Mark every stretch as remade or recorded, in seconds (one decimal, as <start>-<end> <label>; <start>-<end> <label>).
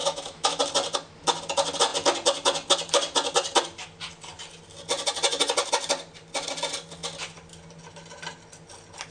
0.0-0.6 remade; 0.6-9.1 recorded